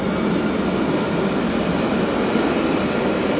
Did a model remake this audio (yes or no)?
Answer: no